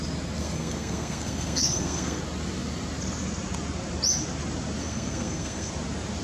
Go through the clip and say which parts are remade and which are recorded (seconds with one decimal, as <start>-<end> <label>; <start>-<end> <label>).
0.0-0.4 recorded; 0.4-2.2 remade; 2.2-4.8 recorded; 4.8-5.7 remade; 5.7-6.2 recorded